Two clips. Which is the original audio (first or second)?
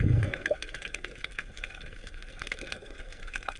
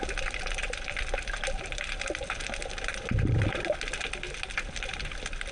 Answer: second